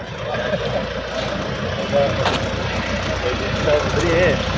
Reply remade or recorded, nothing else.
recorded